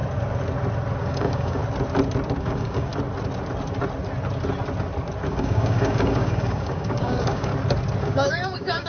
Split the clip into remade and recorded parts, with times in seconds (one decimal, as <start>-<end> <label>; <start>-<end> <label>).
0.0-1.0 recorded; 1.0-1.6 remade; 1.6-2.4 recorded; 2.4-2.9 remade; 2.9-5.3 recorded; 5.3-7.5 remade; 7.5-8.0 recorded; 8.0-8.9 remade